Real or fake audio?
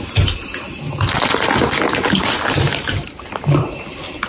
real